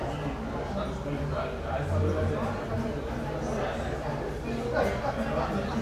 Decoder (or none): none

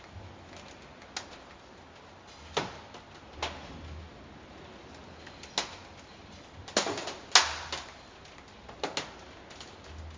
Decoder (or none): none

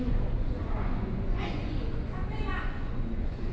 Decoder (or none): vocoder, Vocos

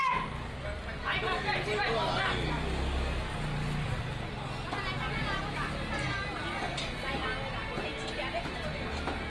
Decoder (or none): none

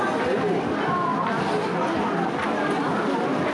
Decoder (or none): none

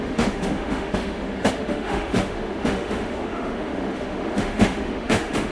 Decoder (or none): autoencoder, DAC-VAE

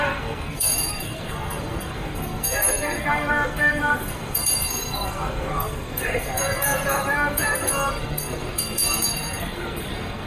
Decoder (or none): codec, SNAC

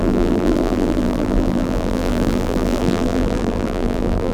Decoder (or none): vocoder, BigVGAN v2